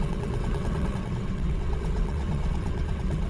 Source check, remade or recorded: remade